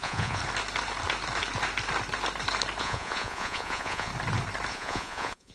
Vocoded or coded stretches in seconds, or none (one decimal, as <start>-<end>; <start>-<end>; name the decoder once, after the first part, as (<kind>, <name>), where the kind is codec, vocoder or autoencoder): 0.0-0.4 (vocoder, Vocos); 2.8-4.1; 4.7-5.5